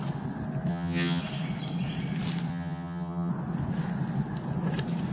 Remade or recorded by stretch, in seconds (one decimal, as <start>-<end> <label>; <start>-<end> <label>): 0.0-0.7 recorded; 0.7-1.2 remade; 1.2-2.5 recorded; 2.5-3.3 remade; 3.3-5.1 recorded